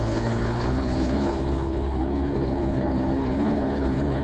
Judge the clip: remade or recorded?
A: remade